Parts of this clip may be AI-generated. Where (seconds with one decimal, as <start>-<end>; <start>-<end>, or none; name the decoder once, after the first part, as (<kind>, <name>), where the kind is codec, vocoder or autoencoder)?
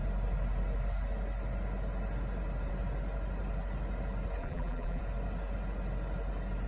4.4-5.0 (vocoder, BigVGAN v2)